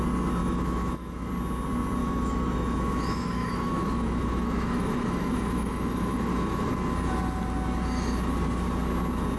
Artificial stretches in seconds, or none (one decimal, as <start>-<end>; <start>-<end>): 0.4-1.3; 2.0-6.7